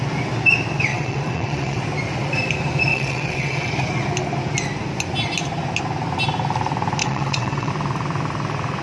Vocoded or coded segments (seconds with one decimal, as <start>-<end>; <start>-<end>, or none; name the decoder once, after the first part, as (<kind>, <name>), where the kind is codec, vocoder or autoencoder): 0.9-1.8 (vocoder, WaveNeXt); 2.9-3.7; 7.0-7.7

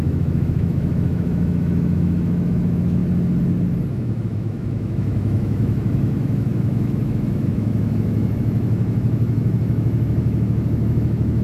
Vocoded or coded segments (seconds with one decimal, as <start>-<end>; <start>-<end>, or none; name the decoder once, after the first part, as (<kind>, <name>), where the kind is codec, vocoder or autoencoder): 0.0-3.0 (autoencoder, DAC-VAE); 3.9-11.4

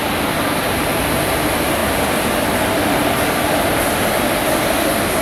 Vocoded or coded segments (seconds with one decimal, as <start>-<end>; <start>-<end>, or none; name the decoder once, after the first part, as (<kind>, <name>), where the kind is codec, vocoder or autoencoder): 0.0-1.8 (vocoder, BigVGAN v2)

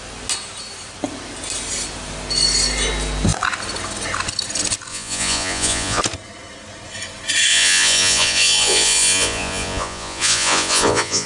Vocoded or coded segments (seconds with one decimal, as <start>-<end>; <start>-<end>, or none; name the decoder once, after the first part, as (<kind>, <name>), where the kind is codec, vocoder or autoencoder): 4.9-6.0 (vocoder, Vocos); 7.5-11.3

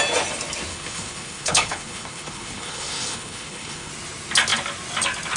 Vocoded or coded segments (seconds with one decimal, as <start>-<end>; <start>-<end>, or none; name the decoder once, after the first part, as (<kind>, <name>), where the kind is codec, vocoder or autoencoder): 0.7-3.9 (codec, HILCodec)